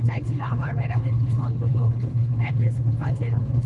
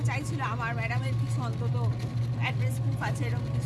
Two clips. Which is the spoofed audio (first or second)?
first